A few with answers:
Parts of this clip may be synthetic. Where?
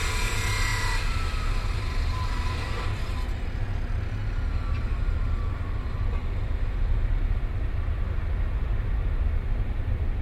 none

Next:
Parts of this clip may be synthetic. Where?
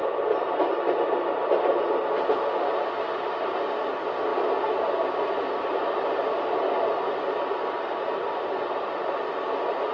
none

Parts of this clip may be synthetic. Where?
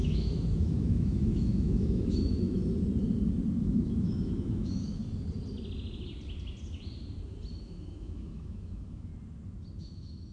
0.0-2.6 (autoencoder, DAC-VAE); 3.6-5.0; 7.6-9.1; 9.8-10.3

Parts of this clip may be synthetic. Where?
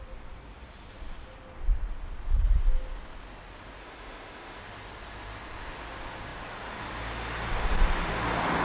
3.8-4.6 (autoencoder, DAC-VAE)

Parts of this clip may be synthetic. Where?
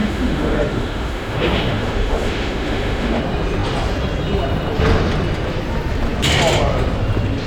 0.0-3.2 (autoencoder, DAC-VAE)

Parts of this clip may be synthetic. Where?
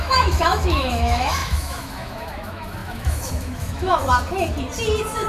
0.0-4.0 (autoencoder, DAC-VAE)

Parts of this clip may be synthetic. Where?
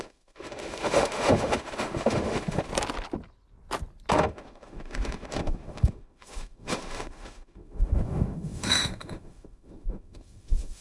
0.0-2.7 (autoencoder, DAC-VAE); 4.1-10.8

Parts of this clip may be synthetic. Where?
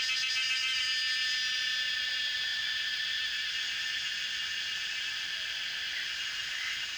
none